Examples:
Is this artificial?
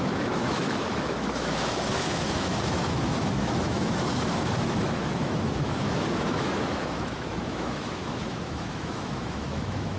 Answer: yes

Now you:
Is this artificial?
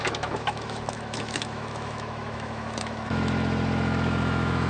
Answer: yes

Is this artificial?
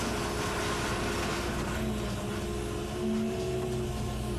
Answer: no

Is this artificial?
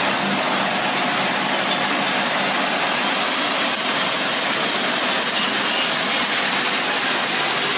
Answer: no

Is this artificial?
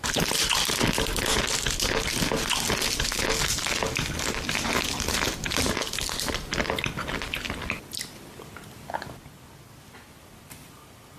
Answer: no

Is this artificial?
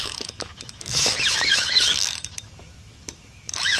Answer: yes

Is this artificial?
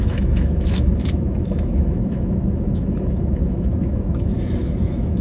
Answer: yes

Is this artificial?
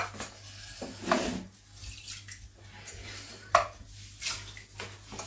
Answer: no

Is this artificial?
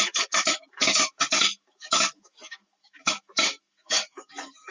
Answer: yes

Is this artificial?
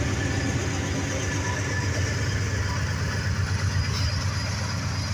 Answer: no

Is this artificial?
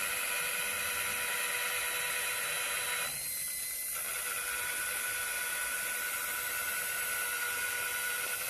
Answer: no